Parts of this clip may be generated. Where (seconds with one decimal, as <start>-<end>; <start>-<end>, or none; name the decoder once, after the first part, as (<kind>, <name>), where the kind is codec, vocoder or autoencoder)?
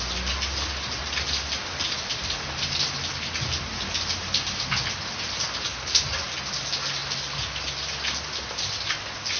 none